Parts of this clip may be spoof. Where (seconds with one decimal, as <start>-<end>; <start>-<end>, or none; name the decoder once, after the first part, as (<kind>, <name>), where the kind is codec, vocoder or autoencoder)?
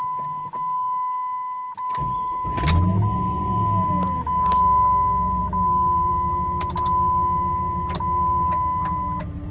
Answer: none